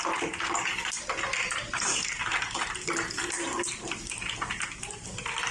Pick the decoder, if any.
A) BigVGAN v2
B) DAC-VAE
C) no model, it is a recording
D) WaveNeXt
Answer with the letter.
C